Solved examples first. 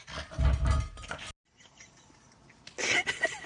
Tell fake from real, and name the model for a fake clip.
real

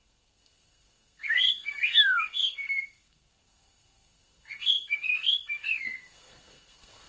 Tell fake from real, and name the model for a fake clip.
fake, codec, SNAC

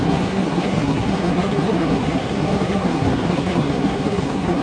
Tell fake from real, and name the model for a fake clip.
fake, codec, SNAC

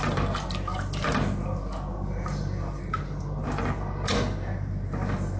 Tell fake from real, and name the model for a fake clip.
real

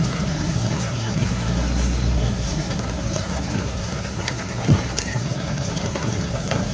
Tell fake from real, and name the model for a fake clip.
fake, codec, SNAC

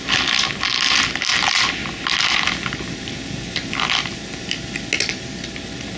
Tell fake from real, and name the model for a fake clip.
real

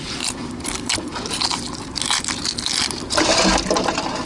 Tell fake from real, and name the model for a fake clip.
real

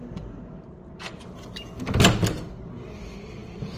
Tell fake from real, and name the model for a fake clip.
real